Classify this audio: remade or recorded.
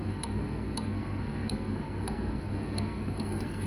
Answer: remade